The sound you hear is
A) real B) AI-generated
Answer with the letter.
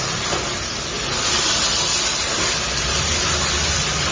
A